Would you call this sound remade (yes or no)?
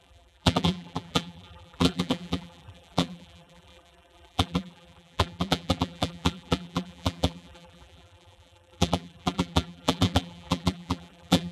yes